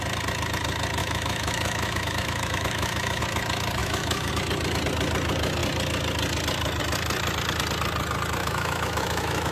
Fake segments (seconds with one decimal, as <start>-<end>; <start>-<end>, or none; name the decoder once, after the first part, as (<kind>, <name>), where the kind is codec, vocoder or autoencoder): 1.0-3.2 (autoencoder, DAC-VAE); 3.8-4.3; 8.4-9.5